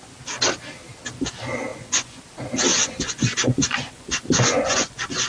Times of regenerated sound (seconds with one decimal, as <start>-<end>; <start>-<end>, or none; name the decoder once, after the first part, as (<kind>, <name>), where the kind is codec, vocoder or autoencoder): 1.7-2.2 (vocoder, Vocos); 2.7-5.3